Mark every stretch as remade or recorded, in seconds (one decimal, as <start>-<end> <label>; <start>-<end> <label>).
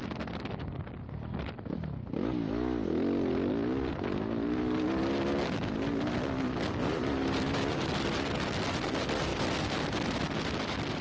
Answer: 0.0-11.0 recorded